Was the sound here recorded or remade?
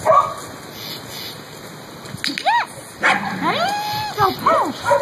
recorded